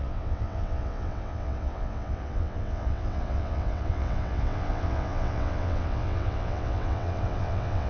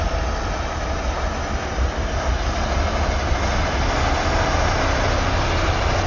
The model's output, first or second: first